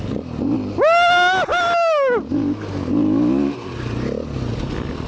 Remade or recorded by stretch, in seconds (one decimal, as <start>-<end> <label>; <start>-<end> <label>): 0.0-5.1 recorded